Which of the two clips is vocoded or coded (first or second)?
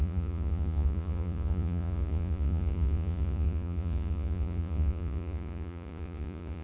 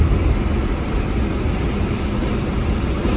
first